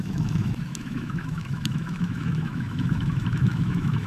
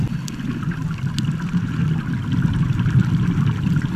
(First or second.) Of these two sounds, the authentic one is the second